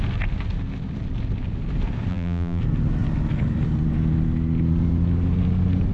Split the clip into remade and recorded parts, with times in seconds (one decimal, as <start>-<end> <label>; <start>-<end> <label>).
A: 0.0-2.1 recorded; 2.1-2.6 remade; 2.6-5.9 recorded